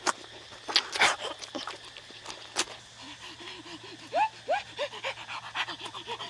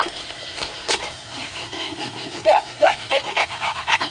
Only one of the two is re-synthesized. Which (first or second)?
second